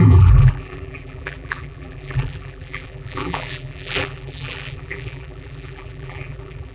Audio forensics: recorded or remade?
remade